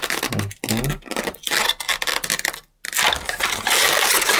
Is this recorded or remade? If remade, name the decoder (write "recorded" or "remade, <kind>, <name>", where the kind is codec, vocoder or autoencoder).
recorded